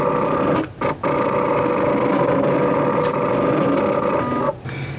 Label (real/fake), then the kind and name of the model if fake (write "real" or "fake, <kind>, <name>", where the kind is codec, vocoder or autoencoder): real